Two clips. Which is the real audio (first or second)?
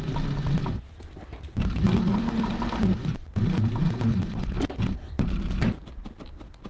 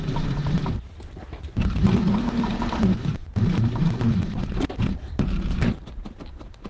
first